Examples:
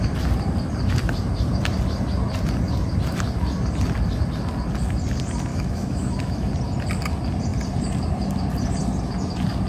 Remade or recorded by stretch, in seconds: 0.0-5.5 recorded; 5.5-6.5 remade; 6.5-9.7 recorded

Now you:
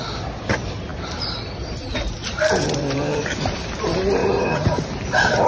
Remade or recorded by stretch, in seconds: 0.0-0.9 recorded; 0.9-1.5 remade; 1.5-2.2 recorded; 2.2-3.8 remade; 3.8-4.2 recorded; 4.2-5.0 remade; 5.0-5.5 recorded

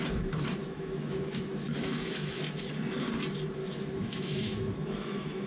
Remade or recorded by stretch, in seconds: 0.0-0.6 recorded; 0.6-2.4 remade; 2.4-3.6 recorded; 3.6-5.5 remade

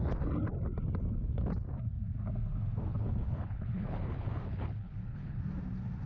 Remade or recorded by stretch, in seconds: 0.0-2.9 recorded; 2.9-5.4 remade; 5.4-6.1 recorded

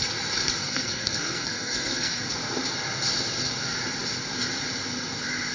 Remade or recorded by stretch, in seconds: 0.0-0.6 recorded; 0.6-2.2 remade; 2.2-5.5 recorded

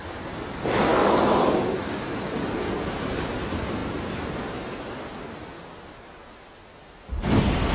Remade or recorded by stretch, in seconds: 0.0-7.7 recorded

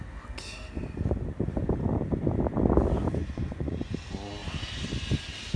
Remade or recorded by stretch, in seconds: 0.0-3.2 recorded; 3.2-3.8 remade; 3.8-5.6 recorded